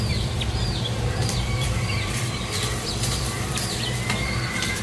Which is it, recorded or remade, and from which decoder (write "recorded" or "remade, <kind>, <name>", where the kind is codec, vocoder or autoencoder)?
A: remade, vocoder, BigVGAN v2